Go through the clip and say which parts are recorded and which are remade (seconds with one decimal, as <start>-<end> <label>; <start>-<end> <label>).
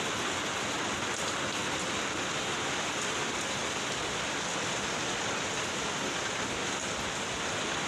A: 0.0-7.9 recorded